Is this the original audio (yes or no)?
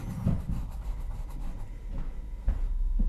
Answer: yes